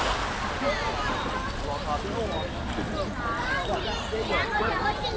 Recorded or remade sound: recorded